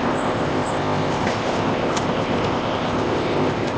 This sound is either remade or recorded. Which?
remade